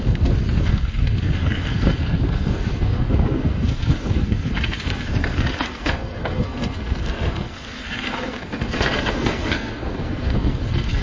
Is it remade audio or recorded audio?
remade